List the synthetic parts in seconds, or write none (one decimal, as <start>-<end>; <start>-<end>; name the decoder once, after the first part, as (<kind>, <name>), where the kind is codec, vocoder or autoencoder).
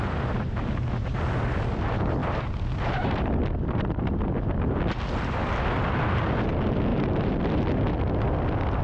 2.2-3.3 (vocoder, BigVGAN v2); 6.9-7.4